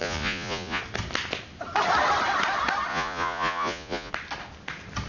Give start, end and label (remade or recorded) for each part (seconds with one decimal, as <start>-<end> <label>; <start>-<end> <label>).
0.0-0.8 remade; 0.8-2.9 recorded; 2.9-4.1 remade; 4.1-5.1 recorded